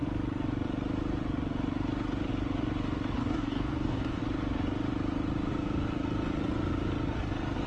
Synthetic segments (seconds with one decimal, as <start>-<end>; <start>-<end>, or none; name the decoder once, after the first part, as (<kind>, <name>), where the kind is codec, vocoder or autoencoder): 3.2-4.2 (codec, DAC)

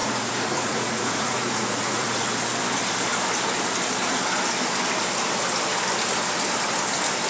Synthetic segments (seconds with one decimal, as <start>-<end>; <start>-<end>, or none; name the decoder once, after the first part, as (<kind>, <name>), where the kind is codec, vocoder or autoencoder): 0.0-2.3 (vocoder, Vocos)